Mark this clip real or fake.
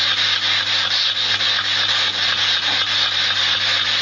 real